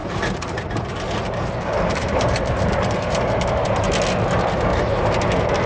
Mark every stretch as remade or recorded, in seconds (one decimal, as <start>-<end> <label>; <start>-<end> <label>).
0.0-3.4 remade; 3.4-4.7 recorded; 4.7-5.2 remade; 5.2-5.7 recorded